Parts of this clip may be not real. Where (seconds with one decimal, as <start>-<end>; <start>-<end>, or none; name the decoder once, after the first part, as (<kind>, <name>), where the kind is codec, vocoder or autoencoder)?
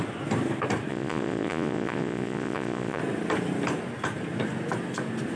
0.9-3.0 (vocoder, Vocos)